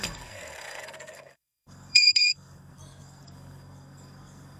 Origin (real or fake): fake